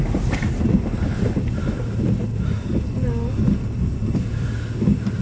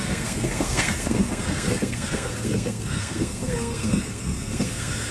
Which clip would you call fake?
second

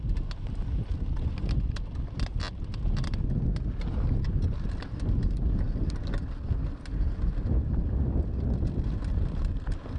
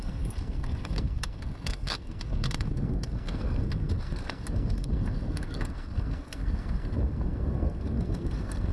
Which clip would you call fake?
second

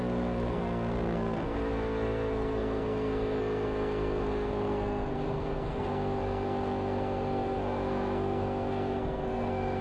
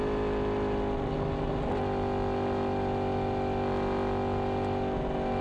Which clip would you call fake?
first